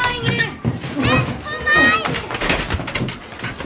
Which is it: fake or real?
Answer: real